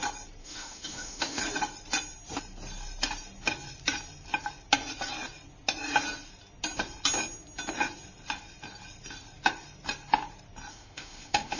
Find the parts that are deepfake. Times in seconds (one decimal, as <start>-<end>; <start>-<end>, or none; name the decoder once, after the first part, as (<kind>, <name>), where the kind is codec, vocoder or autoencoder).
0.4-1.4 (autoencoder, DAC-VAE); 10.7-11.6